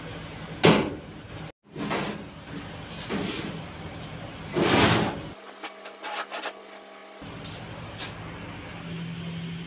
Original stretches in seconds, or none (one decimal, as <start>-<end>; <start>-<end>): 0.0-9.7